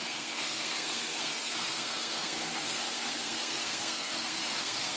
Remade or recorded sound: remade